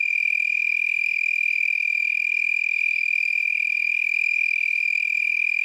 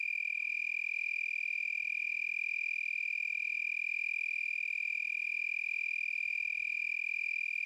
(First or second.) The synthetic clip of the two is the first